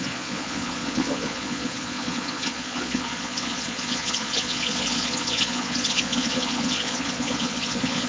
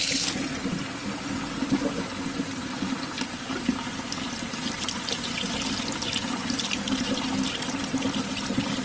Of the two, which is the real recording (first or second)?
second